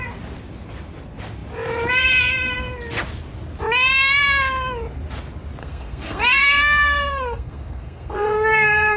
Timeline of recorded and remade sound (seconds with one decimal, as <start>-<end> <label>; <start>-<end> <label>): 0.0-5.6 recorded; 5.6-9.0 remade